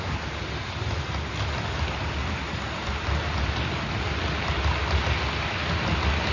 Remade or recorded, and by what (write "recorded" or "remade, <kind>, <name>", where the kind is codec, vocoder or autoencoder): recorded